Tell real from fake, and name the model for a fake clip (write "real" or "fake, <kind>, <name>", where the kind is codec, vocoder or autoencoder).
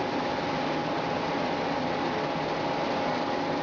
real